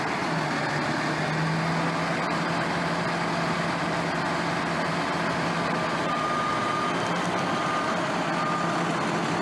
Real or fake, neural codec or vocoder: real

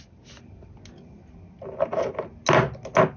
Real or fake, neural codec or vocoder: real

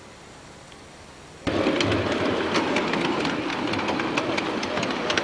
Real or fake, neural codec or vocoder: real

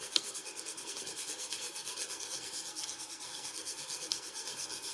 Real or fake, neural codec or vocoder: fake, codec, SNAC